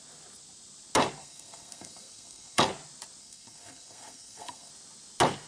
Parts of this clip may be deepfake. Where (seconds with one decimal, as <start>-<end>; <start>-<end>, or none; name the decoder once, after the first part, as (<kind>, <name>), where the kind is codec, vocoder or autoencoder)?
1.2-2.6 (codec, SNAC); 3.2-4.7